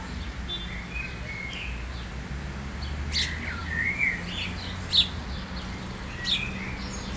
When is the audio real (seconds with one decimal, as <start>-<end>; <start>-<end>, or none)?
0.0-7.2